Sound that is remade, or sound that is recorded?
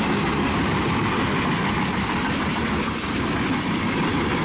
recorded